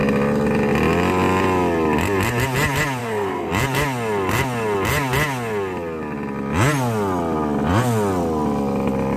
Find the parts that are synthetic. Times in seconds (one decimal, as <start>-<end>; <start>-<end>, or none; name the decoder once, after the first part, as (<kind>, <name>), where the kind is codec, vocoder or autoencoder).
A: 3.0-3.5 (codec, SNAC)